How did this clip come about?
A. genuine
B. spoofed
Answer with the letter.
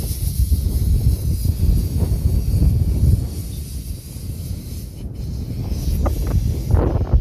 A